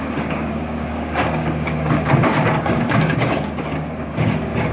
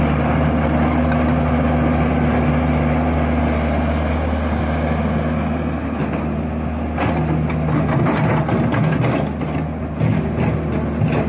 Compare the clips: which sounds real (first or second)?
second